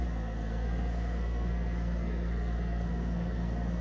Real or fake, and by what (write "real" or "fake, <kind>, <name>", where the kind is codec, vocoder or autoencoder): fake, codec, SNAC